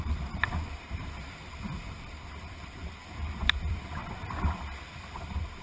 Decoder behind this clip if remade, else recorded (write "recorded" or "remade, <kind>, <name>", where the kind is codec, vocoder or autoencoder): remade, vocoder, BigVGAN v2